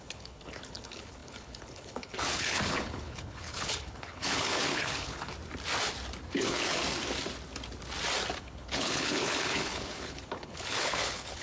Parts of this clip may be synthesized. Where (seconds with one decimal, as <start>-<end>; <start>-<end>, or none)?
0.0-5.3; 6.3-6.8; 8.4-11.4